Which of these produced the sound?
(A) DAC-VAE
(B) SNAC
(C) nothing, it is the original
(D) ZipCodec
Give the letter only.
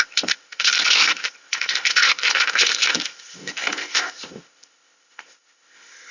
D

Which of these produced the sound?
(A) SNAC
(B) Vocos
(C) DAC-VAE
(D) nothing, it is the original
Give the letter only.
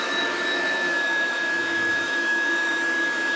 C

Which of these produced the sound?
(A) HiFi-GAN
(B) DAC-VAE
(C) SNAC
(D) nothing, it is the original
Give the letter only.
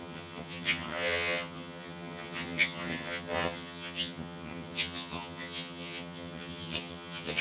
A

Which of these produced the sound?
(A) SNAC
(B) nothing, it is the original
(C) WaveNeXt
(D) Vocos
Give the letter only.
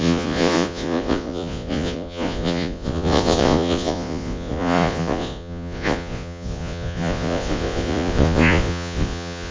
D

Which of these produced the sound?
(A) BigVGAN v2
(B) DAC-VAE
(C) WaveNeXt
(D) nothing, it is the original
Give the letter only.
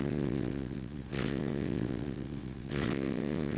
C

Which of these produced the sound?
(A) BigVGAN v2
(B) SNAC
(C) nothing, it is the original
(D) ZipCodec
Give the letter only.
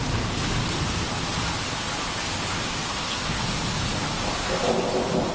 C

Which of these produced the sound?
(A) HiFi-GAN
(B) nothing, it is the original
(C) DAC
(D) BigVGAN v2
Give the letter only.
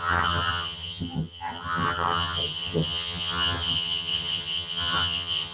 A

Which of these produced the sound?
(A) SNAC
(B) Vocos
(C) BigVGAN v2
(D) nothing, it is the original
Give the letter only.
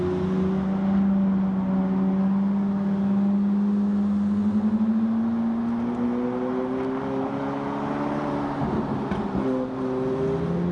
D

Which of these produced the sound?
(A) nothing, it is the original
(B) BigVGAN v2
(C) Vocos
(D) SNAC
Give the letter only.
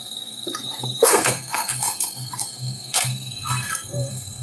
D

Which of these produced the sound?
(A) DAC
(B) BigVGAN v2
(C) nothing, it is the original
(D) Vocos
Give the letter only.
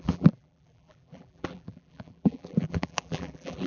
B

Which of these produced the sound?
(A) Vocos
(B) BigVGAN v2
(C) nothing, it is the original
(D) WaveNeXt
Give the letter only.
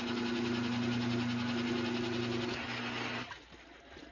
C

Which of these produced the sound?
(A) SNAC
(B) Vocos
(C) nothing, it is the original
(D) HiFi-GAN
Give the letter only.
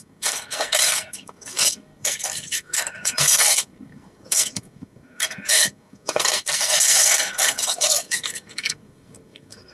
A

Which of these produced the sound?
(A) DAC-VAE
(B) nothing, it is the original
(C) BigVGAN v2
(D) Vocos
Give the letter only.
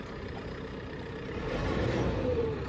C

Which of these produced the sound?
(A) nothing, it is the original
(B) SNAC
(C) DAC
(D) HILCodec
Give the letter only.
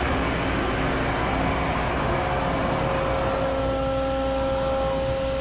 A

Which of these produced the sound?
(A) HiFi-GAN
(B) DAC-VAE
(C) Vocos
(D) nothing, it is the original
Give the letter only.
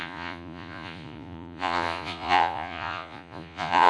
C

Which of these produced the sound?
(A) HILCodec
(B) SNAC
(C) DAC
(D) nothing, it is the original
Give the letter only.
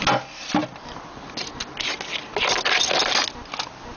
D